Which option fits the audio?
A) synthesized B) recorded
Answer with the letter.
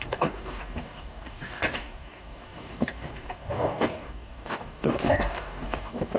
A